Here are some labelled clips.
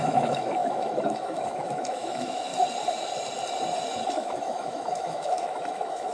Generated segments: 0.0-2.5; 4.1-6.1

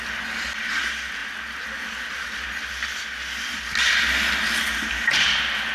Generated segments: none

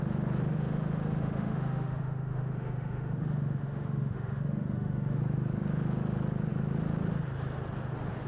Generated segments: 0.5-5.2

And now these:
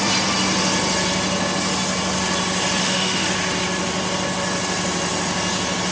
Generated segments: 2.8-3.3